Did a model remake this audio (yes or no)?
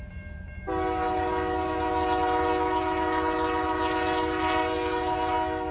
no